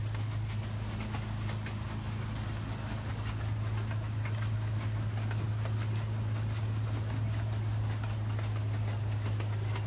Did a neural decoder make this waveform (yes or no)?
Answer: no